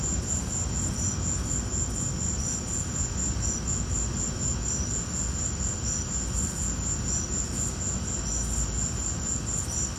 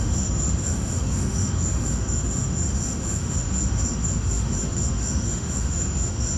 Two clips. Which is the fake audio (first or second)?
second